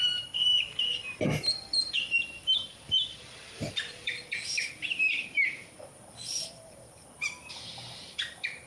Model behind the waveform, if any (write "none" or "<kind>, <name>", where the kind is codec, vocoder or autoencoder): vocoder, BigVGAN v2